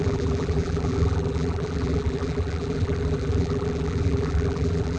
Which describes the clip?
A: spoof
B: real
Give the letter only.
A